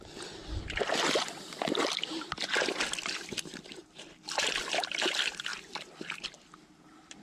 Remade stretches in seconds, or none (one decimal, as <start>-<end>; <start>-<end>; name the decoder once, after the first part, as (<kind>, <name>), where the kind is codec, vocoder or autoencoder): 0.0-0.4 (vocoder, BigVGAN v2); 1.0-7.2